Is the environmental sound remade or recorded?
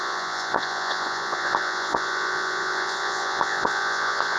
remade